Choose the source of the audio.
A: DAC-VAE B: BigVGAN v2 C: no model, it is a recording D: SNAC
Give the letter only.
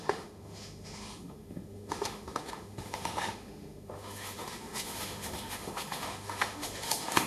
A